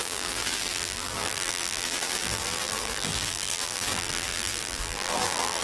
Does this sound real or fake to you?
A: fake